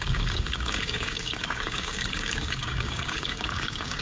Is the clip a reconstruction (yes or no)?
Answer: yes